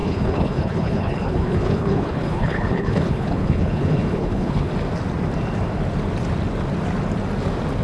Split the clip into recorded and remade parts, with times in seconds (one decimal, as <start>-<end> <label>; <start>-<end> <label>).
0.0-4.7 remade; 4.7-7.8 recorded